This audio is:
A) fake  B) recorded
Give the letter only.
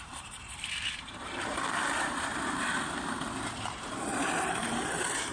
A